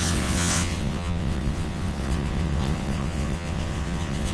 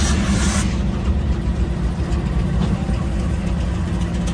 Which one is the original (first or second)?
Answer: second